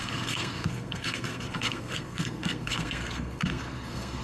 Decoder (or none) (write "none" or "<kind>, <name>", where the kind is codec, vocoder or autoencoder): codec, SNAC